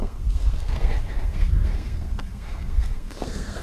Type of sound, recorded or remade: remade